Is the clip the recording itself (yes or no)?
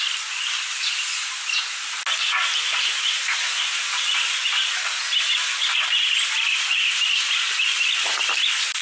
yes